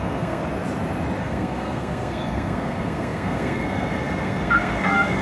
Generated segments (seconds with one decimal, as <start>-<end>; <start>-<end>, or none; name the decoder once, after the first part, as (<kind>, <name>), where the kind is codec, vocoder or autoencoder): 0.0-0.4 (codec, SNAC); 1.2-5.2